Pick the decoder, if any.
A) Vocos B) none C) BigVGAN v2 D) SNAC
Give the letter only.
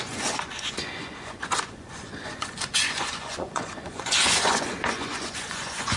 A